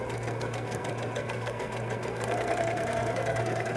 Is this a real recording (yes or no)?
no